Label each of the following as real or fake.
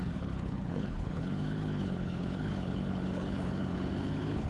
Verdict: fake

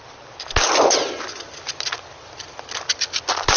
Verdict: real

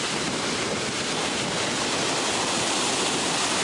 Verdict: real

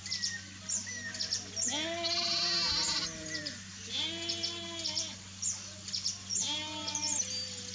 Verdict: real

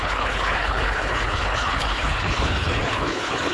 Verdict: fake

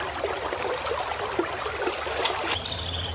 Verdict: real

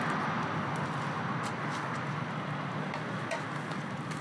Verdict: real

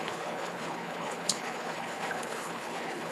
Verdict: fake